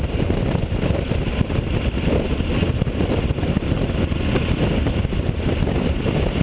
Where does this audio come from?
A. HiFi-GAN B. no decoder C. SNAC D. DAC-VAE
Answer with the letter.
B